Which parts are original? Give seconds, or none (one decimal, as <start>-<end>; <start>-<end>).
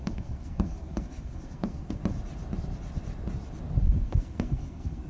2.0-3.8